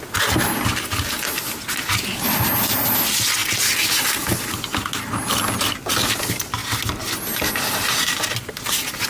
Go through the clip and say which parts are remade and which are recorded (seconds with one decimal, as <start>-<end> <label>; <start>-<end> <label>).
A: 0.0-9.1 recorded